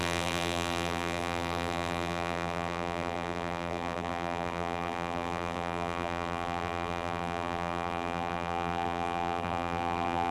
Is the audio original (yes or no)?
no